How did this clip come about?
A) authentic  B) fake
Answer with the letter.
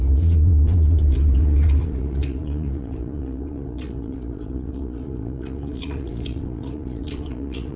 B